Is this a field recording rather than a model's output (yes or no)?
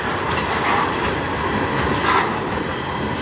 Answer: yes